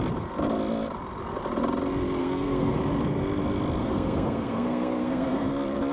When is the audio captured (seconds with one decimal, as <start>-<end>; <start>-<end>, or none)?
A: 0.0-2.2; 2.8-3.8; 5.5-5.9